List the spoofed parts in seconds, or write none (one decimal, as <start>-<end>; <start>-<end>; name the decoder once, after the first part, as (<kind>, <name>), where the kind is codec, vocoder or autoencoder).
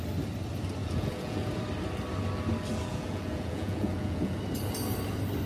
0.8-1.5 (vocoder, Vocos); 2.9-4.4